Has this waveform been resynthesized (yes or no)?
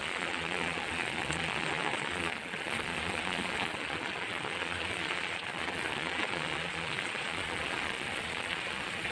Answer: yes